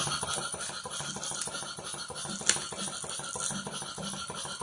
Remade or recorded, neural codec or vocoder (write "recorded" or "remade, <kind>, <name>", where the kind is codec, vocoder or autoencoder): recorded